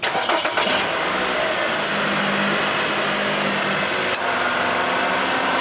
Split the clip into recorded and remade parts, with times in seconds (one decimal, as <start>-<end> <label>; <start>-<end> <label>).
0.0-5.6 recorded